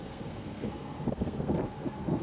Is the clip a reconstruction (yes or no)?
yes